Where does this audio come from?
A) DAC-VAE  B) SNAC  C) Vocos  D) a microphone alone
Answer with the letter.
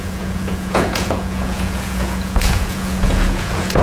C